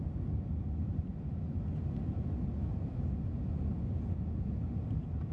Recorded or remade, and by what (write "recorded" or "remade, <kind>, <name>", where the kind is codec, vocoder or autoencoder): recorded